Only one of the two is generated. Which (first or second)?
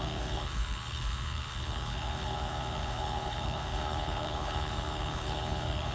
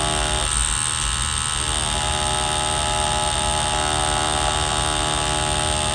first